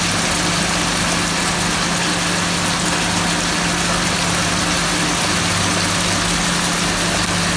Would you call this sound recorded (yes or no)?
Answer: yes